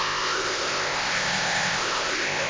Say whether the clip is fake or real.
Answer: fake